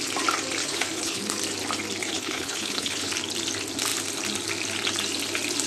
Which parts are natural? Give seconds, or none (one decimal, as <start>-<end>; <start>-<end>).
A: 0.0-0.6; 1.2-2.0; 3.1-5.7